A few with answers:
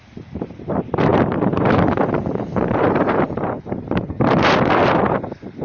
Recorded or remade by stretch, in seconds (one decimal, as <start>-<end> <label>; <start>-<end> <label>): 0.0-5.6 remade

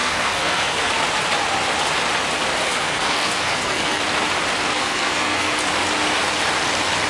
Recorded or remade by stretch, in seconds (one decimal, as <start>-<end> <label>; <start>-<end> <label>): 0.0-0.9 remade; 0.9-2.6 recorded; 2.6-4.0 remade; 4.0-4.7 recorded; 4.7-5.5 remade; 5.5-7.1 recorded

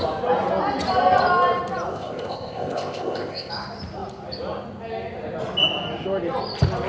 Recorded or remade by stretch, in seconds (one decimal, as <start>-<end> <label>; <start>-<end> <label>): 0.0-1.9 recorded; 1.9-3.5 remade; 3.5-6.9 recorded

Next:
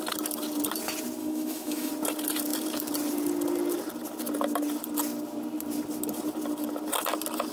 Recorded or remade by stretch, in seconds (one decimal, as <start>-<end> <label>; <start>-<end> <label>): 0.0-1.2 recorded; 1.2-1.9 remade; 1.9-7.5 recorded

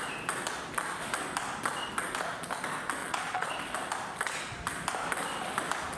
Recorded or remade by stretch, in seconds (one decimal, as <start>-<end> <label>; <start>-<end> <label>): 0.0-3.0 recorded; 3.0-3.5 remade; 3.5-6.0 recorded

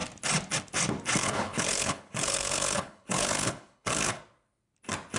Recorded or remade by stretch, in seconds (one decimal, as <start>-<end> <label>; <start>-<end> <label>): 0.0-1.2 recorded; 1.2-4.2 remade; 4.2-5.2 recorded